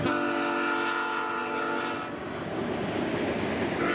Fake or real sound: real